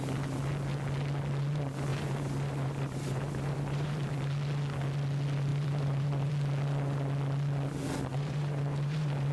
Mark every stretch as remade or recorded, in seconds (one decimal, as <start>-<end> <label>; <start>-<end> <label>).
0.0-1.9 recorded; 1.9-4.1 remade; 4.1-5.5 recorded; 5.5-6.3 remade; 6.3-8.1 recorded; 8.1-9.3 remade